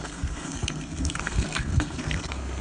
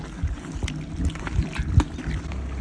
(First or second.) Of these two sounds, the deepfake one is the first